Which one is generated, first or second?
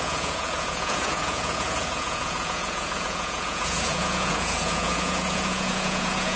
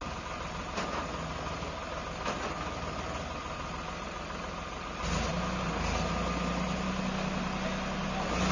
first